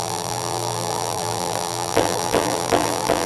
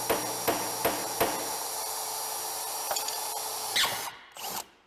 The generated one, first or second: first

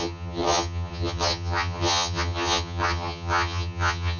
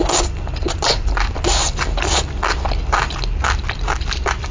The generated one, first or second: first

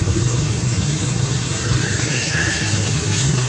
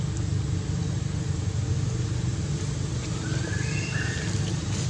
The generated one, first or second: first